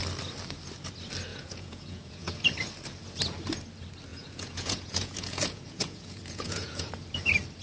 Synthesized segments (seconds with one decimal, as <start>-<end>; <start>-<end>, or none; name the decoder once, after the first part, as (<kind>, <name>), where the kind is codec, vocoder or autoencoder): 1.3-2.4 (vocoder, Vocos); 4.1-6.9